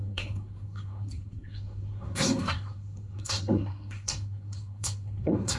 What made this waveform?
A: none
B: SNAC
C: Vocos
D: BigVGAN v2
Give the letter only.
B